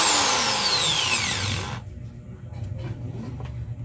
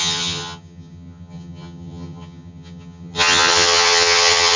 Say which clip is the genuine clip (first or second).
first